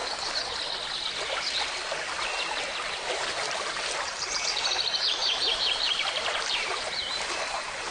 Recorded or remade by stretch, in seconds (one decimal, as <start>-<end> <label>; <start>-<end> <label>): 0.0-3.1 recorded; 3.1-7.9 remade